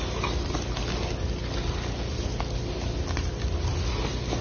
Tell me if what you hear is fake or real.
real